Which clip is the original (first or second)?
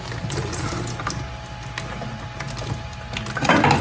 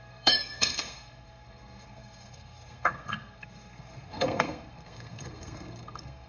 first